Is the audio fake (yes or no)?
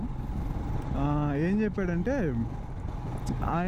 no